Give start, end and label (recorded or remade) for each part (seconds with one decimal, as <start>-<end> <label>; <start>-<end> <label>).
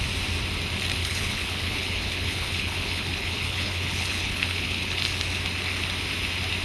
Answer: 0.0-1.0 recorded; 1.0-5.0 remade; 5.0-6.6 recorded